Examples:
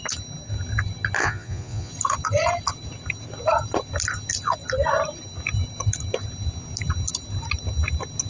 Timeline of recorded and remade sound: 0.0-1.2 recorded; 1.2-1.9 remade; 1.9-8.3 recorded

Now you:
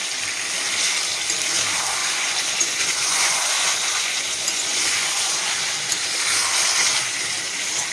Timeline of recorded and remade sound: 0.0-2.0 recorded; 2.0-5.5 remade; 5.5-7.9 recorded

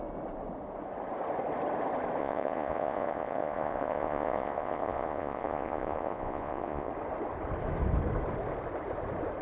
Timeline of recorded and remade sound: 0.0-2.2 recorded; 2.2-6.9 remade; 6.9-9.4 recorded

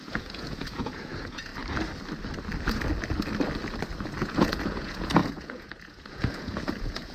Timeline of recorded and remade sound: 0.0-1.5 remade; 1.5-4.2 recorded; 4.2-7.1 remade

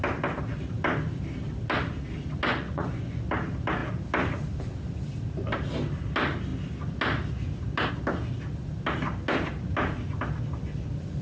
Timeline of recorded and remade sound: 0.0-2.5 recorded; 2.5-3.2 remade; 3.2-11.2 recorded

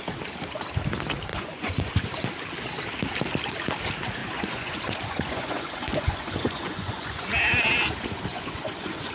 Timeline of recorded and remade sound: 0.0-1.3 recorded; 1.3-1.9 remade; 1.9-4.2 recorded; 4.2-7.3 remade; 7.3-8.3 recorded; 8.3-9.1 remade

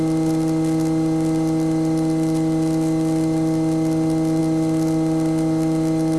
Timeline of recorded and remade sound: 0.0-6.2 recorded